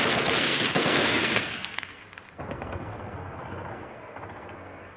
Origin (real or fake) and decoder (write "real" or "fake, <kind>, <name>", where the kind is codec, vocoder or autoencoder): fake, codec, SNAC